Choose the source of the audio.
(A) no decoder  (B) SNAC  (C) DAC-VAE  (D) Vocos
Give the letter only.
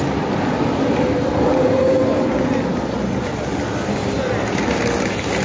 A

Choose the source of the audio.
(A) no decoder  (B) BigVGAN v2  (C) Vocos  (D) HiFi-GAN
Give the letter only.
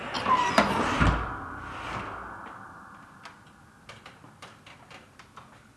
A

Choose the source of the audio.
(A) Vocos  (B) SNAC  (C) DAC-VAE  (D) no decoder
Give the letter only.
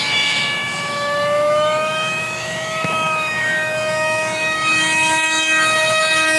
C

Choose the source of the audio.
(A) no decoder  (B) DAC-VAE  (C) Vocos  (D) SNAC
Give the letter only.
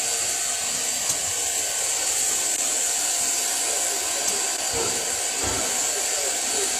A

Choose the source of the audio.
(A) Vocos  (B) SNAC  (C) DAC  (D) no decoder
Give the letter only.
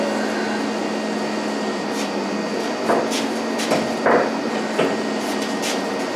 D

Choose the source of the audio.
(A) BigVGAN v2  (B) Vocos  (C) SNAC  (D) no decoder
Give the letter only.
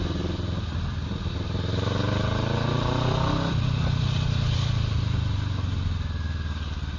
D